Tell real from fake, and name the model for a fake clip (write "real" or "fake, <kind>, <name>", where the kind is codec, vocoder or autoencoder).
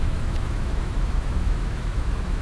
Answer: fake, autoencoder, DAC-VAE